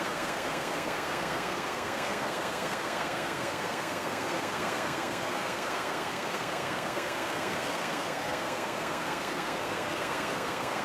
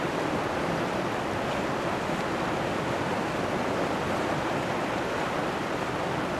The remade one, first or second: first